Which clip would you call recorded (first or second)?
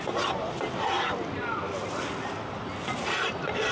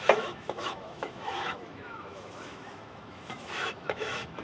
first